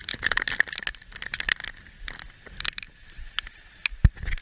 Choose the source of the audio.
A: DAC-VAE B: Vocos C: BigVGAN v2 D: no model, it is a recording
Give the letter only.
D